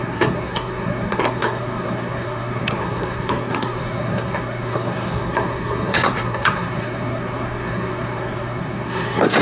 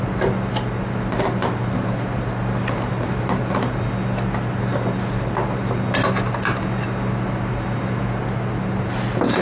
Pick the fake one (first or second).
first